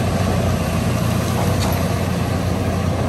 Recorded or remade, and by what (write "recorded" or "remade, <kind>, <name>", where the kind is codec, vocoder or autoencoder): recorded